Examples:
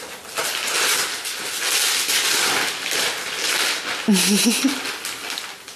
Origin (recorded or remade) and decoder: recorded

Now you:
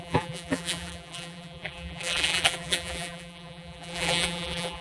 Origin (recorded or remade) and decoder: remade, vocoder, BigVGAN v2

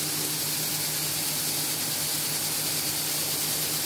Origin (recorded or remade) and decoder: recorded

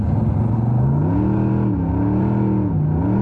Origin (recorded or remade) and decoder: recorded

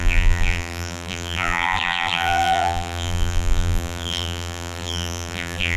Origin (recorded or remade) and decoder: remade, vocoder, BigVGAN v2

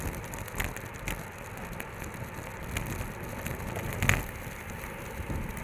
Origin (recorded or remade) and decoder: recorded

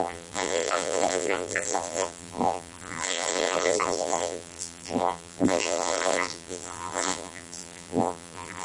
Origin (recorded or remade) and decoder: remade, vocoder, BigVGAN v2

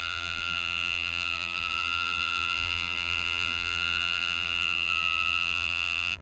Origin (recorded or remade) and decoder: remade, vocoder, BigVGAN v2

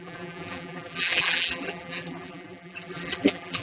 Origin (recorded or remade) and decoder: remade, vocoder, BigVGAN v2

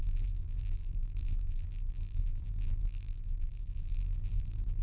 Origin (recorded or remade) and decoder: remade, vocoder, BigVGAN v2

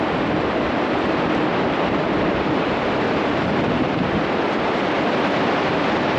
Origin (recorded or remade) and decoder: remade, vocoder, BigVGAN v2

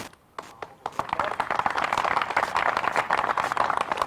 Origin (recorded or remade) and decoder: recorded